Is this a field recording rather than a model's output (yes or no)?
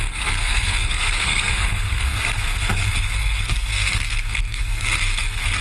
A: no